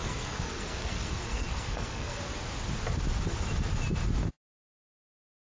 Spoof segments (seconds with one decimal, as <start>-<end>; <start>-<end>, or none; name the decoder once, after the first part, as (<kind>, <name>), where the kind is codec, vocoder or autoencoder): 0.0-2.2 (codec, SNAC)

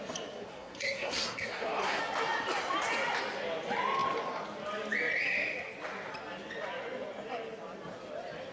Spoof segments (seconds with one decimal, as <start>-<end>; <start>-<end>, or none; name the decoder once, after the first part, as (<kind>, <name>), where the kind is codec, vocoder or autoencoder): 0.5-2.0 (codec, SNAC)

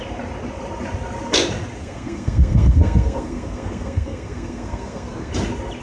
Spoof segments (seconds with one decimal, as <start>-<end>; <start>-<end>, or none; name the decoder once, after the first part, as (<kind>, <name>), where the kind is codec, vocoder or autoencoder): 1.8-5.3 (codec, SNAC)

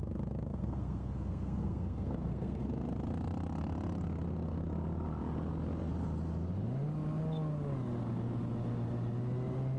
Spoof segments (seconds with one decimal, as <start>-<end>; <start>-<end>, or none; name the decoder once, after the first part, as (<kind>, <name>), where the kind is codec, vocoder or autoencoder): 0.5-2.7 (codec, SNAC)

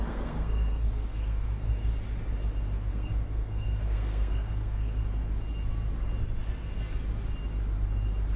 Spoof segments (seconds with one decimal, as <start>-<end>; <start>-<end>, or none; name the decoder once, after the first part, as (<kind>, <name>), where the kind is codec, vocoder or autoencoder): 0.0-1.9 (codec, SNAC); 2.9-5.0